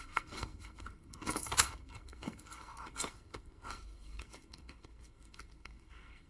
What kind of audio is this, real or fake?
fake